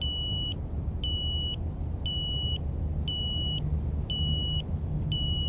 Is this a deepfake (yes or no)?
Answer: no